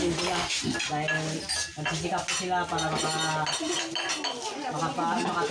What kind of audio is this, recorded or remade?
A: recorded